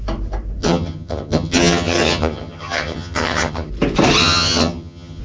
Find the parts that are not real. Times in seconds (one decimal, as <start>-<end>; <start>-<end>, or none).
0.6-3.7; 4.2-5.2